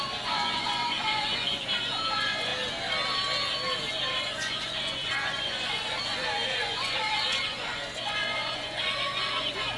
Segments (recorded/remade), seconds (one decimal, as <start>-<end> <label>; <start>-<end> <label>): 0.0-2.5 remade; 2.5-4.2 recorded; 4.2-9.8 remade